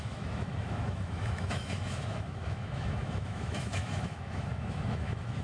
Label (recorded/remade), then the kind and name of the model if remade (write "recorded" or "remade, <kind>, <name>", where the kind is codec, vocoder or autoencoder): remade, autoencoder, DAC-VAE